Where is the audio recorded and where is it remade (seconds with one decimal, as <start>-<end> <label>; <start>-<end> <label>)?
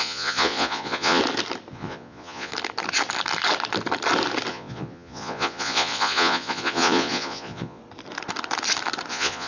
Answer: 0.0-1.2 remade; 1.2-1.7 recorded; 1.7-2.5 remade; 2.5-4.5 recorded; 4.5-7.8 remade; 7.8-9.1 recorded; 9.1-9.5 remade